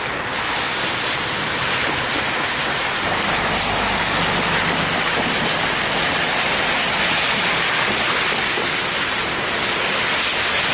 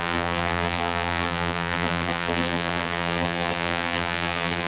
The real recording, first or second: first